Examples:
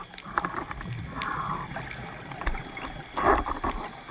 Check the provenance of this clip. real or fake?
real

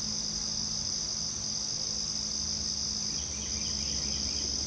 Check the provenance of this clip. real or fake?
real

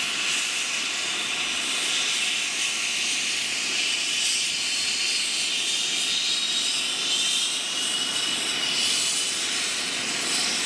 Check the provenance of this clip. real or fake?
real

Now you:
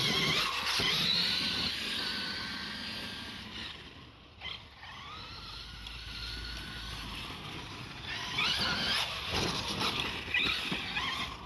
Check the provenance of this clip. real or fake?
real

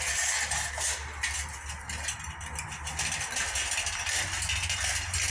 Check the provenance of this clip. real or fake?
real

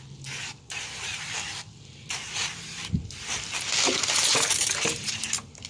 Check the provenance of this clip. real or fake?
real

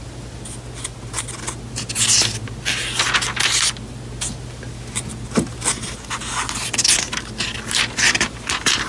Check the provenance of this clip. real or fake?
real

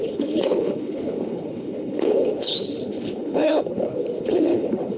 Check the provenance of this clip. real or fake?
fake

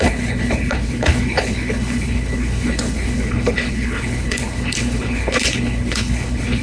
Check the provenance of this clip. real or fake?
fake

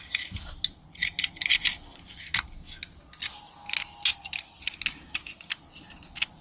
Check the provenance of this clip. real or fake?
real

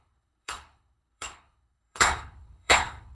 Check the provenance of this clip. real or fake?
fake